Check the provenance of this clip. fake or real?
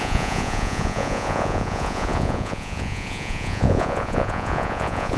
fake